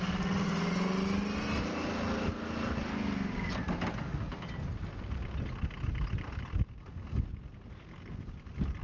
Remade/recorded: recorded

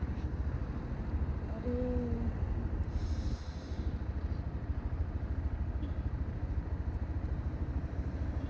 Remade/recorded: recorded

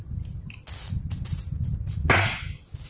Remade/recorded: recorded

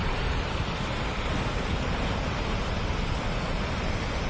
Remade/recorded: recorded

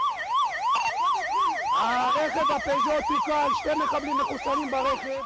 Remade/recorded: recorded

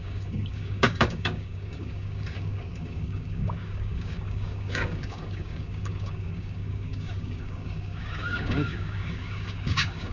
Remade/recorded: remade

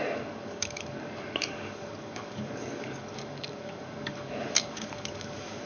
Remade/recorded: remade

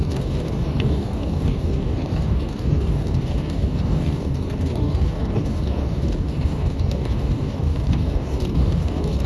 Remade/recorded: remade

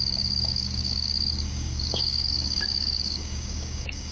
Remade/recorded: remade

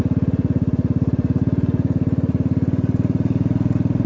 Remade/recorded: recorded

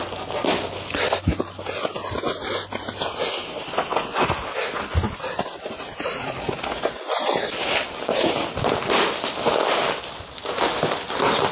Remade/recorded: recorded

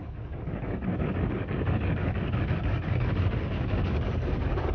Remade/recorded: remade